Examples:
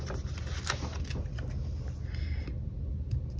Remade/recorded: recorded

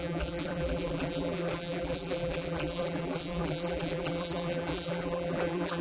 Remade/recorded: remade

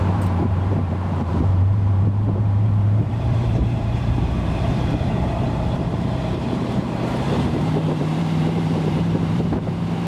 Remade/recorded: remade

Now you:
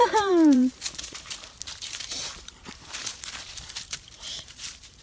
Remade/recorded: remade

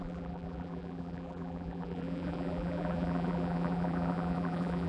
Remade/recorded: remade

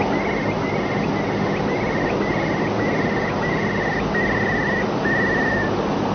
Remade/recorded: recorded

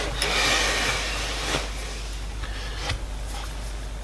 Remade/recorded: recorded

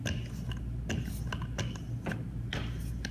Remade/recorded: recorded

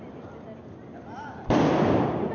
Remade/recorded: recorded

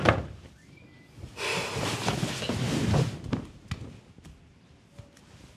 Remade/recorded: recorded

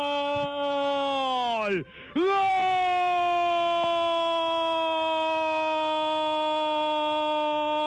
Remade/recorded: recorded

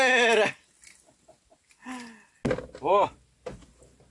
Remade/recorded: recorded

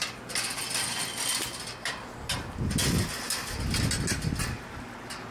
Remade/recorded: recorded